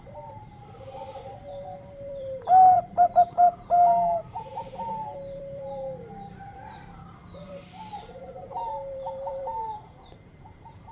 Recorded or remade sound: remade